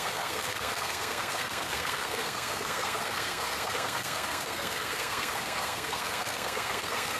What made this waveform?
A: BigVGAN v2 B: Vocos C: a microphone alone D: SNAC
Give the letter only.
D